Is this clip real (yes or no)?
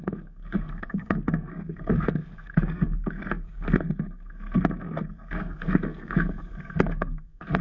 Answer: no